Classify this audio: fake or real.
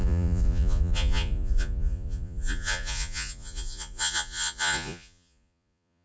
fake